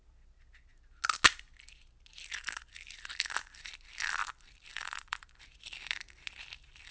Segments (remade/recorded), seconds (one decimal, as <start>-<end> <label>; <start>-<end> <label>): 0.0-4.2 recorded; 4.2-5.4 remade; 5.4-6.9 recorded